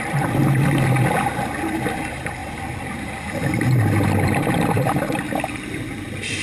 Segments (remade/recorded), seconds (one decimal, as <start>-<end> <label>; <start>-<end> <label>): 0.0-6.4 recorded

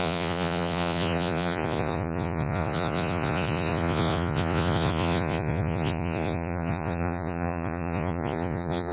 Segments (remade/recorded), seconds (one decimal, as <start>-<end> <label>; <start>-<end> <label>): 0.0-8.9 remade

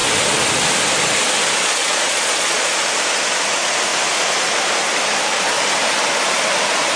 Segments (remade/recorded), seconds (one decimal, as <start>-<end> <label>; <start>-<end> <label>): 0.0-1.6 recorded; 1.6-2.7 remade; 2.7-7.0 recorded

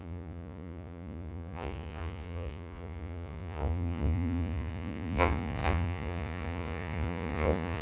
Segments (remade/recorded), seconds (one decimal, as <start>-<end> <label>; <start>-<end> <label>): 0.0-7.8 remade

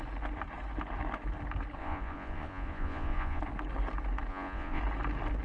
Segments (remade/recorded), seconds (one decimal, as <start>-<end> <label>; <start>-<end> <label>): 0.0-1.8 recorded; 1.8-3.4 remade; 3.4-4.3 recorded; 4.3-4.8 remade; 4.8-5.4 recorded

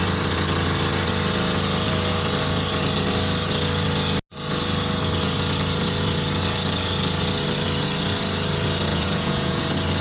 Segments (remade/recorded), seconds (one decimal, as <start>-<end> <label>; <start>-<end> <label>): 0.0-8.9 recorded; 8.9-9.6 remade; 9.6-10.0 recorded

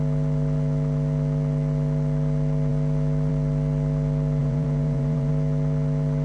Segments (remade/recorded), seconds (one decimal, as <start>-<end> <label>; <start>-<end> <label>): 0.0-4.4 recorded; 4.4-5.3 remade; 5.3-6.2 recorded

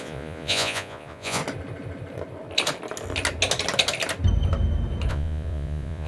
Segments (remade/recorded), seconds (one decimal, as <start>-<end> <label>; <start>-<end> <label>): 0.0-1.4 remade; 1.4-5.1 recorded; 5.1-6.1 remade